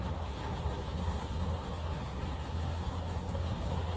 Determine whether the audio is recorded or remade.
remade